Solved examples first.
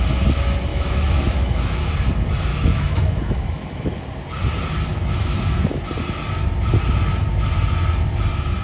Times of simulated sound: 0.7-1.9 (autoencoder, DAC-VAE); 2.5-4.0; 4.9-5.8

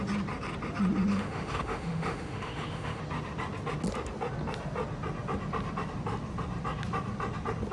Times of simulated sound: 1.1-3.0 (autoencoder, DAC-VAE)

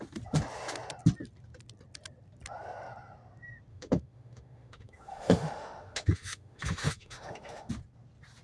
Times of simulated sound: 3.7-7.7 (autoencoder, DAC-VAE)